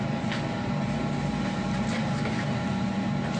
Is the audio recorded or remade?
recorded